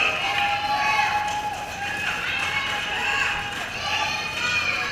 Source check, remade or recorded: recorded